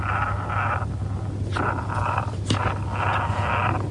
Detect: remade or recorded recorded